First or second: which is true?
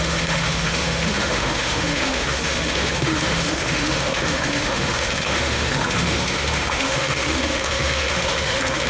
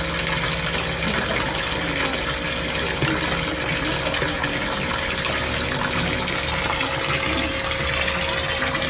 second